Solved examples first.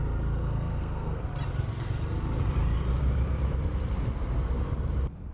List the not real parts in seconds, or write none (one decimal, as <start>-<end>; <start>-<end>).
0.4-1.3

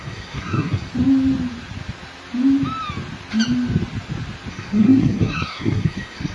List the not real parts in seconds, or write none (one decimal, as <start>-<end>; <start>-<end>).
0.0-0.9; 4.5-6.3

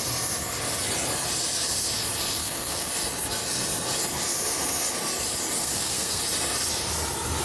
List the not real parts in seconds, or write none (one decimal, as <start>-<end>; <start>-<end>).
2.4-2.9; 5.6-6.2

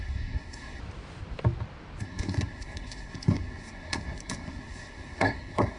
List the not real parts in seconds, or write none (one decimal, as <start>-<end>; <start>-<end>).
0.0-0.8; 2.0-5.8

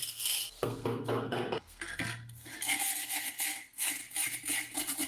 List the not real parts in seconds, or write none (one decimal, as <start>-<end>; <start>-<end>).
0.0-4.0